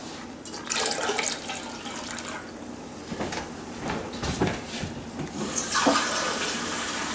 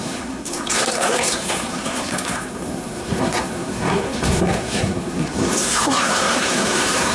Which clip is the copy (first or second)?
second